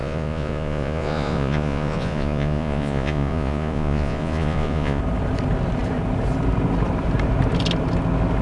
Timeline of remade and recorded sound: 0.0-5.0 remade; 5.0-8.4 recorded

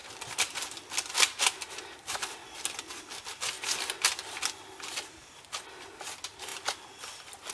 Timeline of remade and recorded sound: 0.0-7.5 recorded

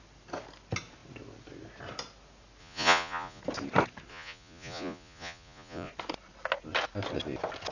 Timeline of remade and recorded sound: 0.0-2.6 recorded; 2.6-3.4 remade; 3.4-4.1 recorded; 4.1-5.9 remade; 5.9-7.7 recorded